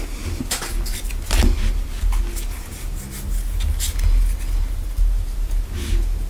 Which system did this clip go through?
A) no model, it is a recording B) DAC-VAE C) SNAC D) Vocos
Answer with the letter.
A